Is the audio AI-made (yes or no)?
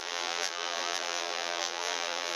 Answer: yes